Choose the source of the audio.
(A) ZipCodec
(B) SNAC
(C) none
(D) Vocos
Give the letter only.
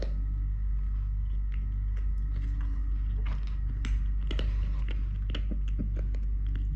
C